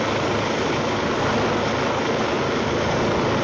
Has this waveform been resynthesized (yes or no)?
no